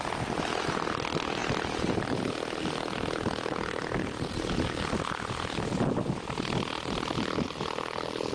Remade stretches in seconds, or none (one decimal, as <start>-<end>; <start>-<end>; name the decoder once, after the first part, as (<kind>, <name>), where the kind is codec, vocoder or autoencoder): none